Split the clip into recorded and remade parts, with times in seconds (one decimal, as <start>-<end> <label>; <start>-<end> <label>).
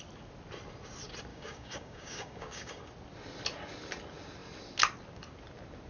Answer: 0.0-1.3 recorded; 1.3-2.8 remade; 2.8-5.9 recorded